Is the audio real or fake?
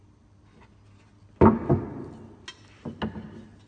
real